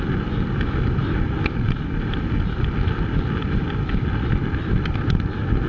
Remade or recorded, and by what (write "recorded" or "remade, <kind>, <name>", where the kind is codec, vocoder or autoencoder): recorded